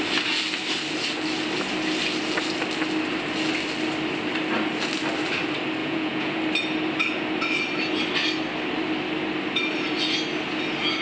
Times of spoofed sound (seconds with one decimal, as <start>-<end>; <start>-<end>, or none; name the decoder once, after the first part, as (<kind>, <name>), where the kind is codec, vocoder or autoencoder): 5.8-6.4 (vocoder, Vocos)